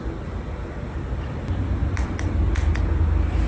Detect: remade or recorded recorded